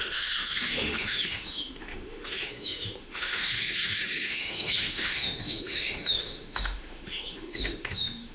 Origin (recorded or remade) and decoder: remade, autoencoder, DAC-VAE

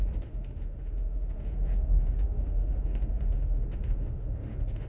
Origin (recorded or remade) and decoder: remade, autoencoder, DAC-VAE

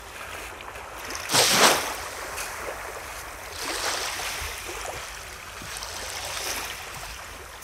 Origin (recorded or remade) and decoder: recorded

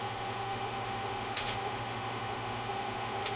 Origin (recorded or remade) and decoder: remade, autoencoder, DAC-VAE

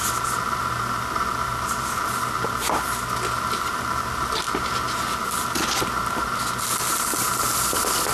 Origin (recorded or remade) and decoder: recorded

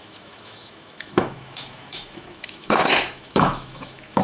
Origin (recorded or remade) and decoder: remade, autoencoder, DAC-VAE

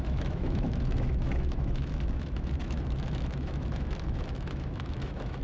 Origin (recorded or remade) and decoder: remade, autoencoder, DAC-VAE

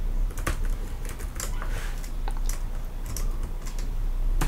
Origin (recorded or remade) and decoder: recorded